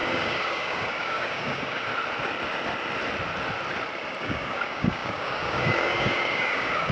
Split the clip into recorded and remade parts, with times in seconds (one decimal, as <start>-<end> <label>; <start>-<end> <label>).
0.0-1.9 remade; 1.9-4.2 recorded; 4.2-6.9 remade